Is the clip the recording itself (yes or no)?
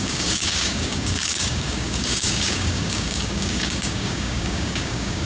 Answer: no